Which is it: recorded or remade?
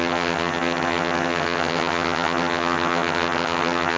remade